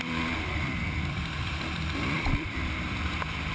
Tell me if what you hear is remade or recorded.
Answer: remade